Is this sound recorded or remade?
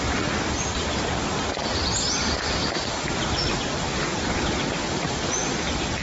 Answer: recorded